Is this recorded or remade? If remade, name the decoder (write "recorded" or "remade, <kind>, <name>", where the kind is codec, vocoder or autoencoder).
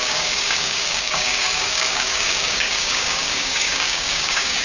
remade, codec, DAC